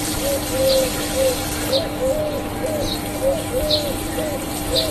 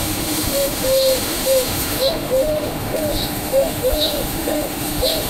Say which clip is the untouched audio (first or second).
first